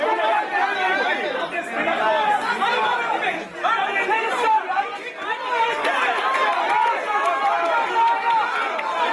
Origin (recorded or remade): recorded